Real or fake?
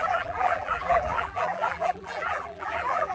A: fake